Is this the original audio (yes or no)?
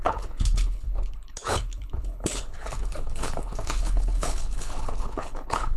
no